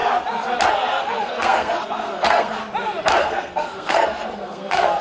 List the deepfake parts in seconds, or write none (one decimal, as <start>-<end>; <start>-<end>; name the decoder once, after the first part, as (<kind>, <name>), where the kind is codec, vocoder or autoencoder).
0.7-2.6 (codec, SNAC); 3.2-5.0